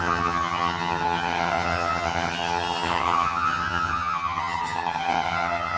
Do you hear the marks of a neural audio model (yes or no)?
yes